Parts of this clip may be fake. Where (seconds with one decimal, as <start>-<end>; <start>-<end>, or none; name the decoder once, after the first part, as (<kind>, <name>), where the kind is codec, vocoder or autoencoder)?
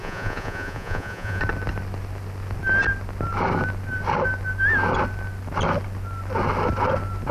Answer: 0.0-1.4 (vocoder, Vocos)